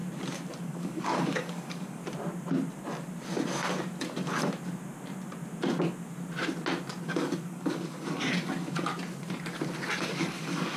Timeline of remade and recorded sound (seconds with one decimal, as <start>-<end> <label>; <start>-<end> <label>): 0.0-0.6 recorded; 0.6-2.0 remade; 2.0-7.0 recorded; 7.0-8.9 remade; 8.9-10.1 recorded; 10.1-10.8 remade